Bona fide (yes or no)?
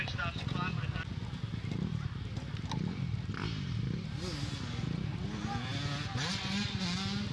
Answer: yes